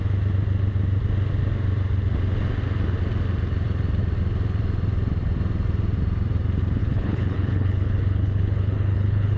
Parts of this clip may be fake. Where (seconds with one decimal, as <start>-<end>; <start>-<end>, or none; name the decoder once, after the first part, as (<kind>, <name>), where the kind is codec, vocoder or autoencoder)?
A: 6.8-9.4 (codec, HILCodec)